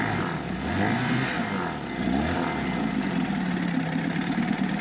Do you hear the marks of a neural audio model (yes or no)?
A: no